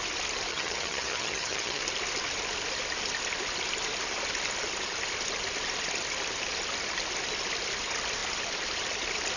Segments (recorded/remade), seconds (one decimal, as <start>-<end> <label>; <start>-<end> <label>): 0.0-0.5 recorded; 0.5-1.8 remade; 1.8-9.4 recorded